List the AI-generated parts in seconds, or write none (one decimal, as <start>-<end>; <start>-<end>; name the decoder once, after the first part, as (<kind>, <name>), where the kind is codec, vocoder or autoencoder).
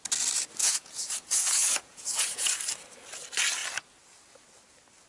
0.6-2.5 (vocoder, Vocos)